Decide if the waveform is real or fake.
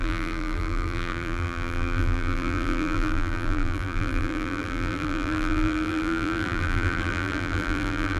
fake